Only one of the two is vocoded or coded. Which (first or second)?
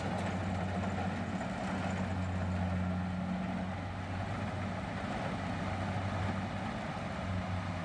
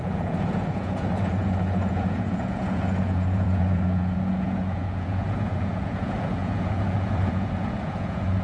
second